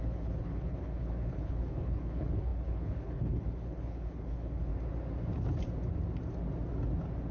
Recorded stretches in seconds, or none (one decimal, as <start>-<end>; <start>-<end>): 4.7-7.3